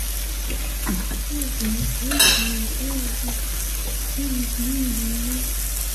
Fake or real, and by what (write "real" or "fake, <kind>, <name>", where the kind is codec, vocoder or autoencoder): real